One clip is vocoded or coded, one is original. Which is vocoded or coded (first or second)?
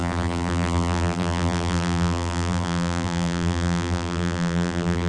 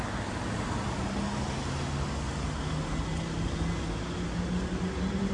first